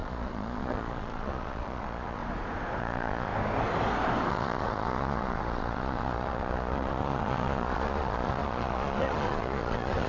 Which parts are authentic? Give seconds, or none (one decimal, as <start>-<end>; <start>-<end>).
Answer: 2.2-2.8; 3.3-4.3